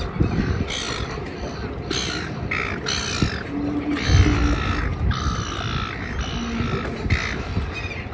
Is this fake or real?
real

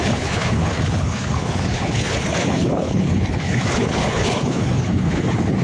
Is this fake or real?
fake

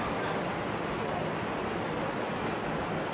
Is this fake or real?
real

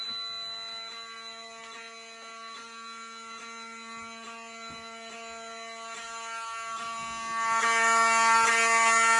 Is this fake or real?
real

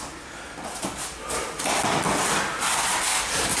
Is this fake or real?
real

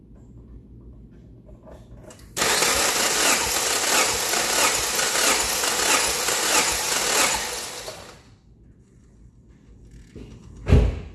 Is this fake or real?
real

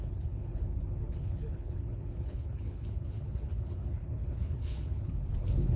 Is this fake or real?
fake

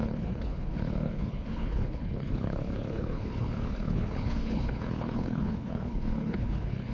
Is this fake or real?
fake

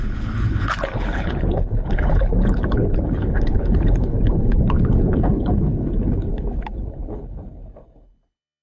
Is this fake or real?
fake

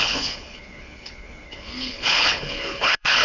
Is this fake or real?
fake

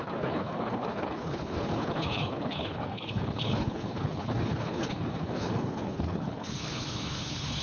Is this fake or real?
fake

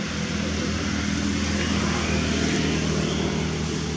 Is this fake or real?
real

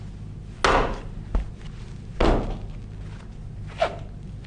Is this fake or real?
real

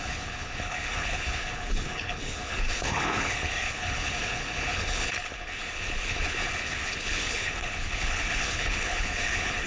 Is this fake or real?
fake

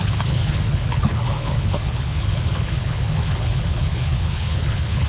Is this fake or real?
fake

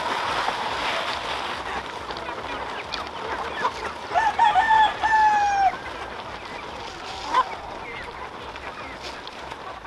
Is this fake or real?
real